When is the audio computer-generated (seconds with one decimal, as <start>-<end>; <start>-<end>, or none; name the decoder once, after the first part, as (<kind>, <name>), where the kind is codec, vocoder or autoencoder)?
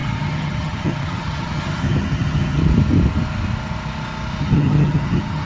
0.0-2.6 (vocoder, HiFi-GAN); 4.4-5.5